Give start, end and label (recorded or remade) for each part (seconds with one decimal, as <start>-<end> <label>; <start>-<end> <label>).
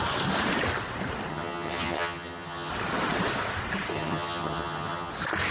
0.0-1.3 recorded; 1.3-2.7 remade; 2.7-3.9 recorded; 3.9-5.1 remade; 5.1-5.5 recorded